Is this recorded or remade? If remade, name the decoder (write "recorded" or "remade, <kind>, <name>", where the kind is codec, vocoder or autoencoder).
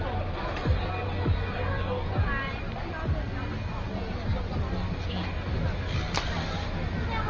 recorded